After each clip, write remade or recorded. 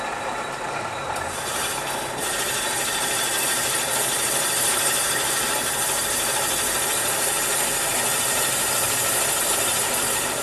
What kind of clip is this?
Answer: remade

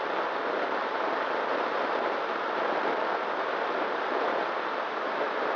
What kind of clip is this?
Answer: remade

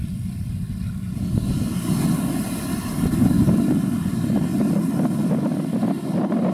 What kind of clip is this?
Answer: recorded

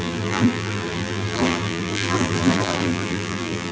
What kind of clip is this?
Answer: remade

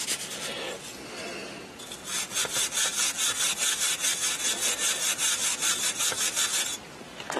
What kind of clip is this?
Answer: recorded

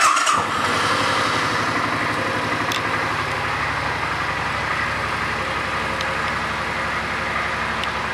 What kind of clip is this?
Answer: recorded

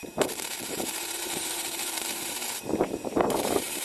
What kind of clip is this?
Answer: remade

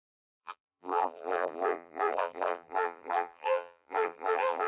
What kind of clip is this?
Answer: remade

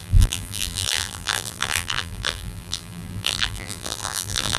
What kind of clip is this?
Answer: remade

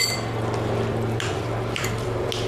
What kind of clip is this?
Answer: remade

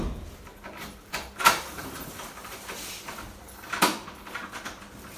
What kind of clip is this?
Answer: remade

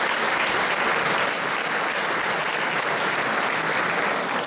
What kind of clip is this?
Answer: recorded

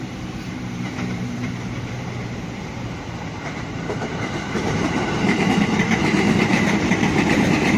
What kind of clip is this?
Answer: remade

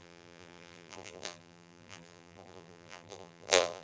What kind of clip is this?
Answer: remade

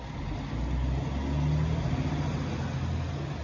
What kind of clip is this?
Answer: recorded